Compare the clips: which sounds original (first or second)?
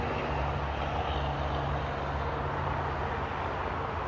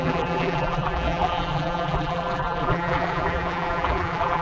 first